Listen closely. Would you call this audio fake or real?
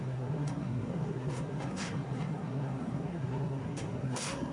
fake